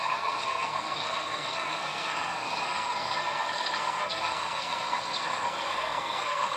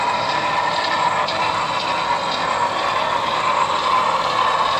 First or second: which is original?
second